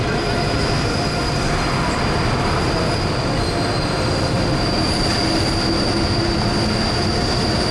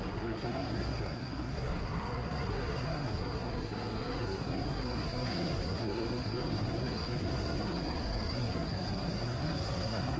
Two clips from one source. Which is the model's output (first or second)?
second